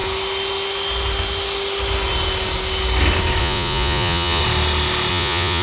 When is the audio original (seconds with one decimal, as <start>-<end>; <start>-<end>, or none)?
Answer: 0.0-3.4; 4.4-5.1